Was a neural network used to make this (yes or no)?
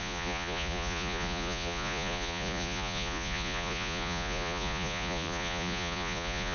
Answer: yes